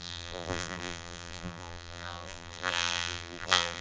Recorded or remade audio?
remade